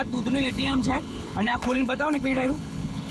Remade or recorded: remade